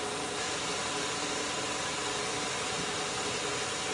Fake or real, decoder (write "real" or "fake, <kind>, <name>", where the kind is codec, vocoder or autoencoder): real